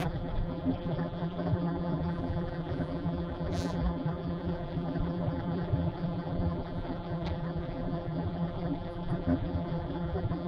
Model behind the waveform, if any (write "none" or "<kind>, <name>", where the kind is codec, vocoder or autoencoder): vocoder, BigVGAN v2